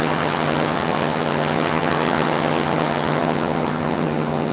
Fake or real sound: fake